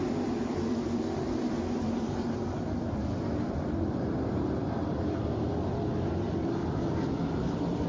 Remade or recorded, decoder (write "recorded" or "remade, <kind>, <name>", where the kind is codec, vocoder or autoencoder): remade, vocoder, BigVGAN v2